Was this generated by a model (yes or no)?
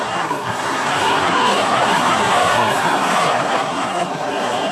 yes